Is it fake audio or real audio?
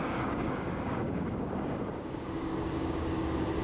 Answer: fake